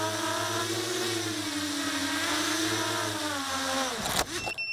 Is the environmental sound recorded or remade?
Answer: recorded